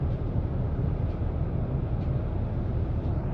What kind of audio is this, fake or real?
real